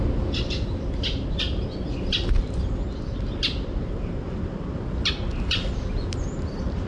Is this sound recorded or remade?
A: recorded